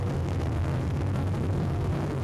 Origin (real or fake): fake